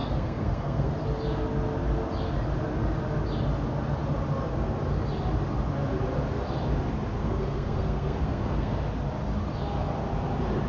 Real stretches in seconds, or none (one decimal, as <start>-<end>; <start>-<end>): 0.9-7.2; 8.8-10.7